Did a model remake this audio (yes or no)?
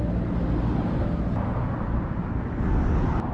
no